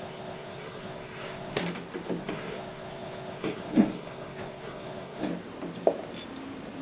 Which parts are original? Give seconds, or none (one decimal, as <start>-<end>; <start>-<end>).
1.6-2.2; 5.3-6.8